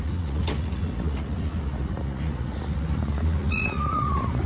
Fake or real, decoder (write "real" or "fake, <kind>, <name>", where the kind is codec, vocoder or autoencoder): fake, vocoder, Vocos